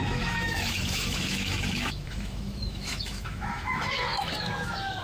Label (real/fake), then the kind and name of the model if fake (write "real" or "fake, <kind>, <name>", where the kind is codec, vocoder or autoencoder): fake, autoencoder, DAC-VAE